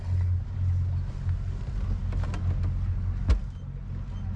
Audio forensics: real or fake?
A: real